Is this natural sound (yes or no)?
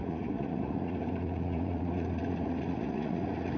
no